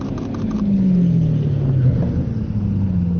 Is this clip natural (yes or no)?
yes